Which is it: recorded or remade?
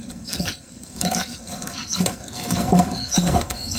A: remade